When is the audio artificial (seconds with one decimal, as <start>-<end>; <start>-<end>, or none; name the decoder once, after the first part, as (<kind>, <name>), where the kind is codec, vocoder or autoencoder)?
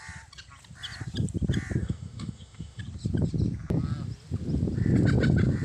1.8-2.8 (autoencoder, DAC-VAE)